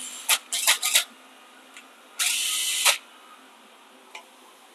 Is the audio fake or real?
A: real